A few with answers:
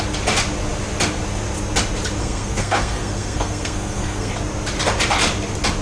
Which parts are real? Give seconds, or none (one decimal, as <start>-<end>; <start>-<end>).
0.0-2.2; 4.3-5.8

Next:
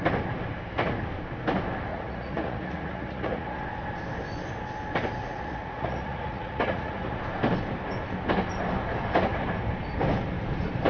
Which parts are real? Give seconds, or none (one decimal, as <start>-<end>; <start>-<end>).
0.0-1.9; 3.6-5.2; 7.2-10.9

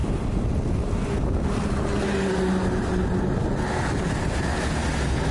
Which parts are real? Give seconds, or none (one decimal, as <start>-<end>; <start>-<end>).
0.0-5.3

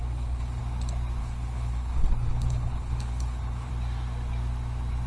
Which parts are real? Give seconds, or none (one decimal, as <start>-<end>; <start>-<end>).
0.6-1.2; 3.7-5.1

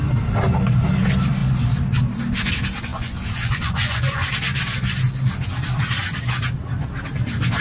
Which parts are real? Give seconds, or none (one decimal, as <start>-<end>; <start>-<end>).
0.0-2.9; 4.3-7.6

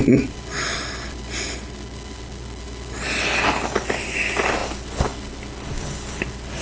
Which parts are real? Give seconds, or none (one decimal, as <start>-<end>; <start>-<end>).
1.2-6.6